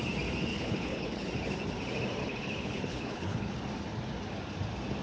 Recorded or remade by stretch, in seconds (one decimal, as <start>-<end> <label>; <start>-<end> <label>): 0.0-0.5 recorded; 0.5-1.3 remade; 1.3-2.2 recorded; 2.2-3.6 remade; 3.6-5.0 recorded